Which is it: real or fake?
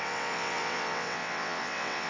fake